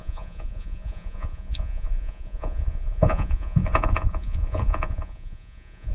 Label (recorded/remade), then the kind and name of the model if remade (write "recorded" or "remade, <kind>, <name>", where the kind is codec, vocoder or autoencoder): remade, vocoder, Vocos